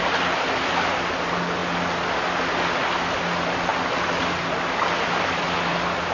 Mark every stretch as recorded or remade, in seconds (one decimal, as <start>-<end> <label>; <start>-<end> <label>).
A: 0.0-6.1 recorded